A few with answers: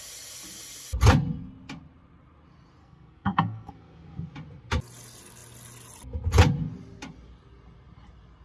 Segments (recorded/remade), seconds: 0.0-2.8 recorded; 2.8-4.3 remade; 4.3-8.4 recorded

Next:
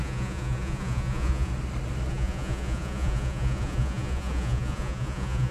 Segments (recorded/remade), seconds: 0.0-1.5 remade; 1.5-2.1 recorded; 2.1-5.5 remade

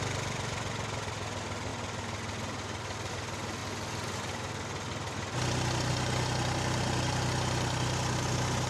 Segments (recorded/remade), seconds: 0.0-8.7 recorded

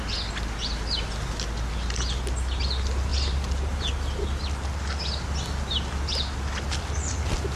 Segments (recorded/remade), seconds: 0.0-3.1 recorded; 3.1-3.9 remade; 3.9-7.6 recorded

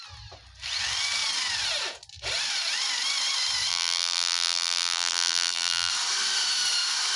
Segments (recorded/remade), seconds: 0.0-3.7 recorded; 3.7-5.9 remade; 5.9-7.2 recorded

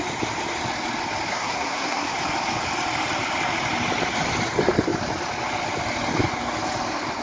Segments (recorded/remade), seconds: 0.0-1.3 recorded; 1.3-2.1 remade; 2.1-7.2 recorded